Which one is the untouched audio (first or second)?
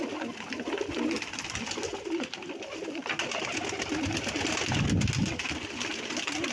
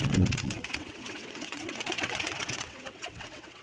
first